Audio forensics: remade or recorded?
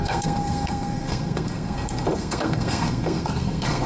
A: remade